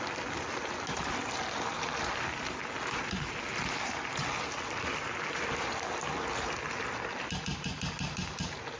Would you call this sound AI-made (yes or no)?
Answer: no